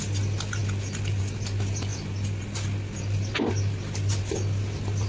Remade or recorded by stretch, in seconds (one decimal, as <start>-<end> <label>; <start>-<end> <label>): 0.0-5.1 recorded